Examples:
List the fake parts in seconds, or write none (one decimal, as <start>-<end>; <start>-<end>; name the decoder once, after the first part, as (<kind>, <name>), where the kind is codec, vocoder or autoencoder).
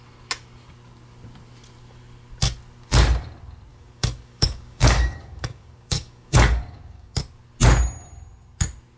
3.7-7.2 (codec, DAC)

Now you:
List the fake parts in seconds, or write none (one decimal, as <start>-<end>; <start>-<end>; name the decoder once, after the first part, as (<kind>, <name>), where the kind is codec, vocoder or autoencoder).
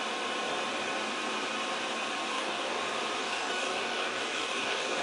2.3-2.8 (codec, DAC); 3.2-5.0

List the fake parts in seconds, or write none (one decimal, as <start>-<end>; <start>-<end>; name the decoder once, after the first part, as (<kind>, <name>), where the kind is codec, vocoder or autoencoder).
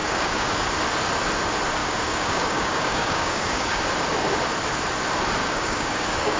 0.0-0.7 (codec, DAC); 1.8-3.8; 5.4-6.4